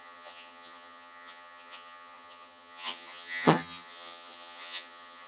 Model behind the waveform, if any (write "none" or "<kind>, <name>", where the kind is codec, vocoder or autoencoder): vocoder, HiFi-GAN